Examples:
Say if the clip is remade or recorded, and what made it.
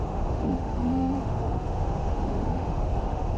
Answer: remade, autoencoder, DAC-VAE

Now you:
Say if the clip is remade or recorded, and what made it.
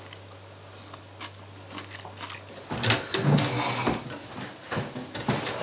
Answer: recorded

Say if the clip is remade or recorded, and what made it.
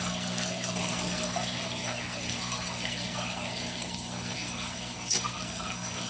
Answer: remade, codec, SNAC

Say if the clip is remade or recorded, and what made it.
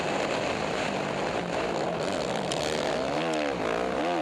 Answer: recorded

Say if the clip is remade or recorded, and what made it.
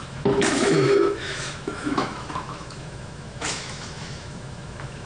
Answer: remade, autoencoder, DAC-VAE